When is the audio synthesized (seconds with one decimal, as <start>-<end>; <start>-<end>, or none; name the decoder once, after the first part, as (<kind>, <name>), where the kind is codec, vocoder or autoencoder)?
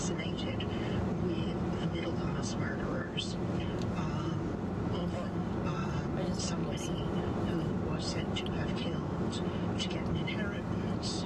none